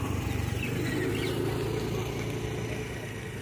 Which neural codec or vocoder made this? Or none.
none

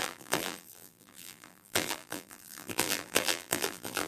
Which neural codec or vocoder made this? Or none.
vocoder, BigVGAN v2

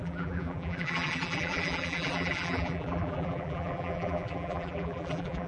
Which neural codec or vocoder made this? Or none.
vocoder, BigVGAN v2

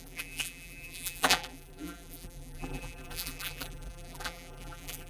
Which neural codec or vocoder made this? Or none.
vocoder, BigVGAN v2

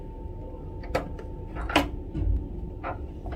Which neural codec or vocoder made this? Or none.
none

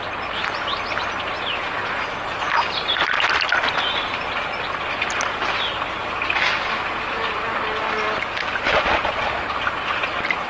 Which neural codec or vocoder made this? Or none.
none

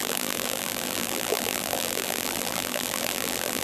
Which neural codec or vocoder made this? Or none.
vocoder, BigVGAN v2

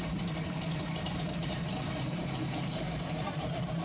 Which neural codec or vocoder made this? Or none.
vocoder, BigVGAN v2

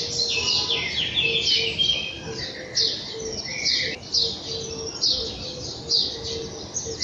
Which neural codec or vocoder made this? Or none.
none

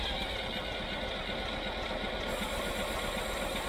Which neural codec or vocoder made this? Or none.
none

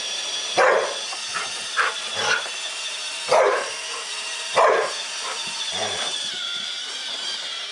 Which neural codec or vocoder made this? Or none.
vocoder, BigVGAN v2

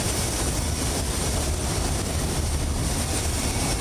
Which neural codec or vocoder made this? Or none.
vocoder, BigVGAN v2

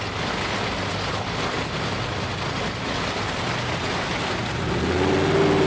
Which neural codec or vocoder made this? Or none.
none